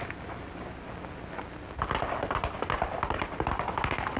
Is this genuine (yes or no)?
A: yes